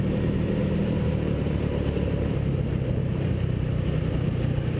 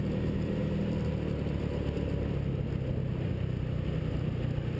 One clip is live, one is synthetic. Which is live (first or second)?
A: second